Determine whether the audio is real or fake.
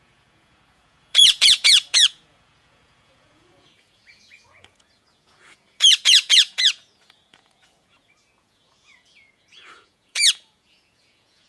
fake